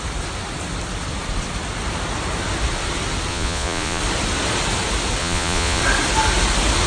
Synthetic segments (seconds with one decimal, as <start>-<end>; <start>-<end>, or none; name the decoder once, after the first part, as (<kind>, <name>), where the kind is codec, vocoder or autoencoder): 3.3-4.0 (vocoder, Vocos); 5.2-5.8